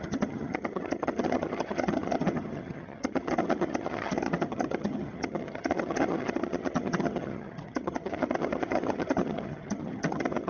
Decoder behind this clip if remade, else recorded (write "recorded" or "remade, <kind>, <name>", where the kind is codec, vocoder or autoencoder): remade, vocoder, HiFi-GAN